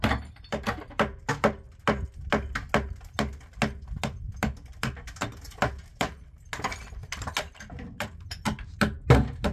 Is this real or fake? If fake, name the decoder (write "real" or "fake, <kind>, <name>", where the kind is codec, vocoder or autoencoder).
real